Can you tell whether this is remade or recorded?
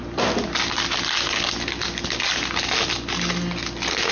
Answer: recorded